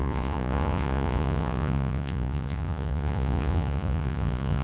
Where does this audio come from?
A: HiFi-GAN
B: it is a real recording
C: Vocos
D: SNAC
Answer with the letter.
C